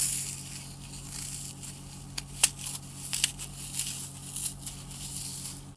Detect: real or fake real